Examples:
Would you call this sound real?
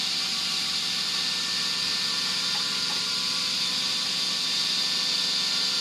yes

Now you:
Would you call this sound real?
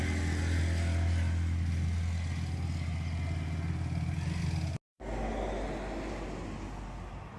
yes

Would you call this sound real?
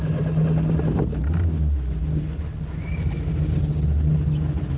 yes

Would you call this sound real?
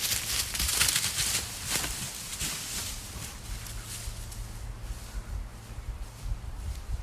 yes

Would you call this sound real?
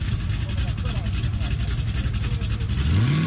yes